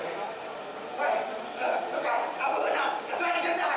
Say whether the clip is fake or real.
real